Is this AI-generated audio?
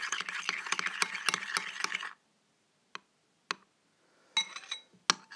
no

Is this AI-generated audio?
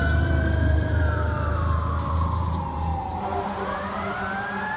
yes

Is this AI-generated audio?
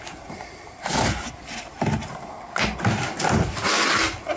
no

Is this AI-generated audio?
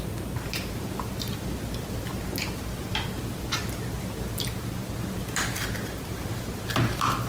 no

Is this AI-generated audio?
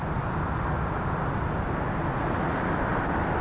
no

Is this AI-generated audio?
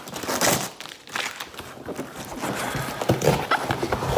no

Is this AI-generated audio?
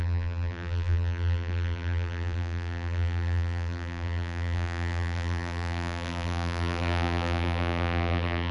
yes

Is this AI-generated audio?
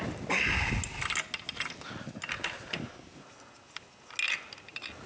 no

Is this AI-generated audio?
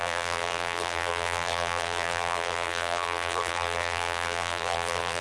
yes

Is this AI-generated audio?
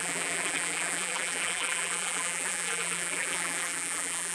yes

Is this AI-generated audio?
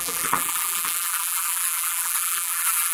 yes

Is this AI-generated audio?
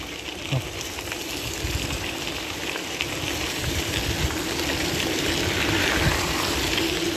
no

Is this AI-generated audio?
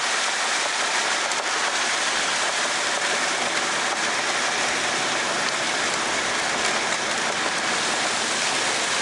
yes